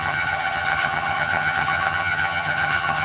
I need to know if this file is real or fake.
fake